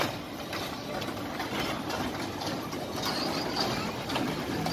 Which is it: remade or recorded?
recorded